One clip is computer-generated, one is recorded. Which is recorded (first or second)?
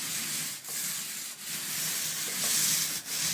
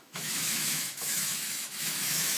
first